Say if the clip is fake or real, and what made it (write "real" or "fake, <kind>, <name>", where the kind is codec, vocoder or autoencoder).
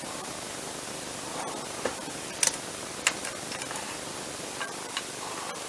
fake, vocoder, BigVGAN v2